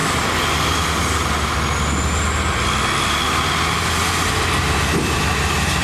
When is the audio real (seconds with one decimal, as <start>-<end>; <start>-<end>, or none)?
0.0-5.8